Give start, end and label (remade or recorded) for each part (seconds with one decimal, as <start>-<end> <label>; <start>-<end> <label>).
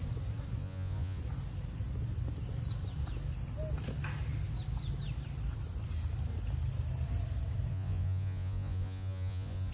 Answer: 0.0-0.6 recorded; 0.6-1.2 remade; 1.2-7.7 recorded; 7.7-9.7 remade